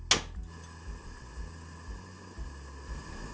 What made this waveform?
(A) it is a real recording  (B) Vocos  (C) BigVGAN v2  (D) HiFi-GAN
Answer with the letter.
A